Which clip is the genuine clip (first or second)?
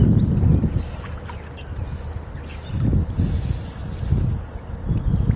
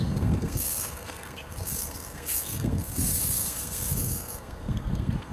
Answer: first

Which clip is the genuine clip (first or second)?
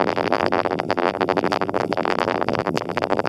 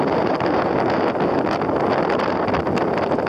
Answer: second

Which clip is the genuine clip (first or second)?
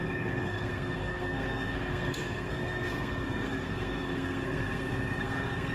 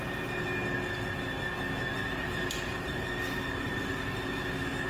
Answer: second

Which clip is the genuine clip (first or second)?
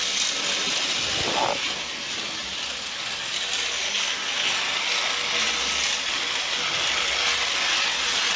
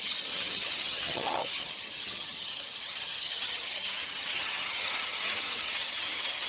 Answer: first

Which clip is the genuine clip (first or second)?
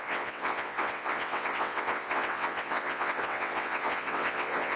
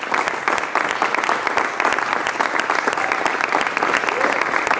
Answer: second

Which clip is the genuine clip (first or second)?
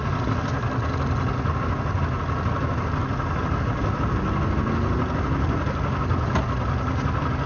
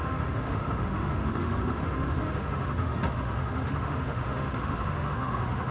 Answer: first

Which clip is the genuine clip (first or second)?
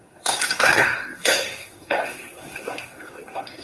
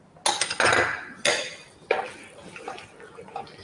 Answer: second